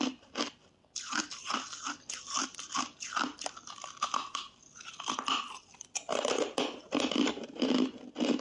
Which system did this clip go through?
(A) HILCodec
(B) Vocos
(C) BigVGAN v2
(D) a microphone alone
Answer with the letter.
D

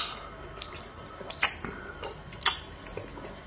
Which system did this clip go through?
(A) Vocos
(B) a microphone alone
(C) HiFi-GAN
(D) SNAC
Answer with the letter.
B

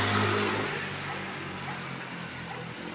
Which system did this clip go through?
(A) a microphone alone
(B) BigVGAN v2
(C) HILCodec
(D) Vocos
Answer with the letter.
A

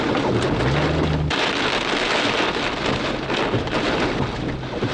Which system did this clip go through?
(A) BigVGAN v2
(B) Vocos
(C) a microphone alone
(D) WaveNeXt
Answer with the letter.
C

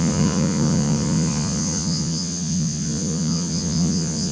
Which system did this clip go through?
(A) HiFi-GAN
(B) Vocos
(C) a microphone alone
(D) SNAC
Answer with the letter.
B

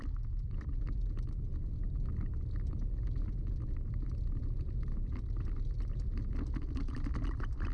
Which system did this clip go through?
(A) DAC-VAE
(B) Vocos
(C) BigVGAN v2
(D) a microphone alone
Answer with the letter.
D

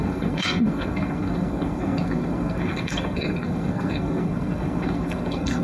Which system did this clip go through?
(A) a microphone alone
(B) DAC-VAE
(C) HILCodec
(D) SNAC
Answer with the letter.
D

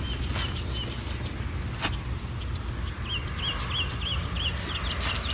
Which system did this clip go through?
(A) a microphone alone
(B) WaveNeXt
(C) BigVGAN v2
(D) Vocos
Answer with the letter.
A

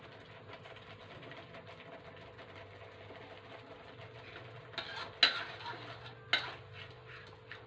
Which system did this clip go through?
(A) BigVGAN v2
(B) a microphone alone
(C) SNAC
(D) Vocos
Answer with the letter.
B